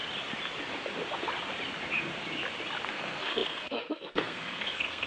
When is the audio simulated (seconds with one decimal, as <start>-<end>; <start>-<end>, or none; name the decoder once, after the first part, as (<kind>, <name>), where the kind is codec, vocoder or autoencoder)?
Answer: 2.9-5.1 (codec, SNAC)

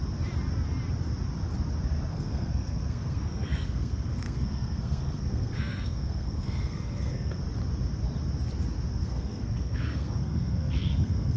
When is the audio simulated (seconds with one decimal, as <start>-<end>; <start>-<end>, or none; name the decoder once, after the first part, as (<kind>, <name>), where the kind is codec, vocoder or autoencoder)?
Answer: 2.1-7.4 (codec, SNAC); 9.0-11.4